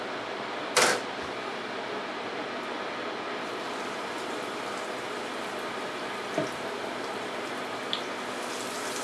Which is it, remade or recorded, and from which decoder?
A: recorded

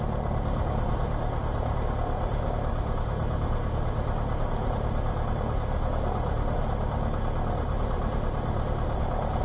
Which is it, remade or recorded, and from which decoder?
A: recorded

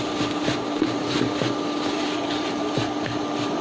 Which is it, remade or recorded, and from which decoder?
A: remade, vocoder, BigVGAN v2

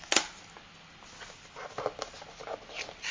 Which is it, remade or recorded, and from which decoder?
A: recorded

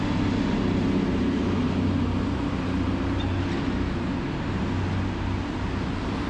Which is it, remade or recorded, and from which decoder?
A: recorded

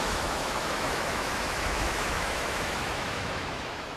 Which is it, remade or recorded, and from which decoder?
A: remade, autoencoder, DAC-VAE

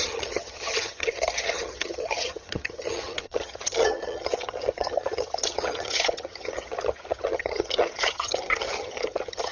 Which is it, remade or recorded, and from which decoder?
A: remade, vocoder, HiFi-GAN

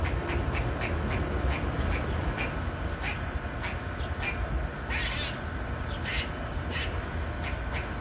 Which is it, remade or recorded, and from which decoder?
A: recorded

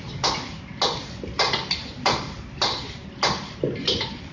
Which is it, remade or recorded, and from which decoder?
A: recorded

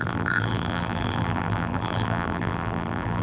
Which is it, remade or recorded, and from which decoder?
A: remade, vocoder, BigVGAN v2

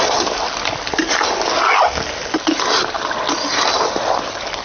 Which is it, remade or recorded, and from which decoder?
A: recorded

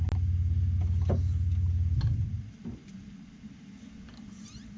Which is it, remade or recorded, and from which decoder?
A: recorded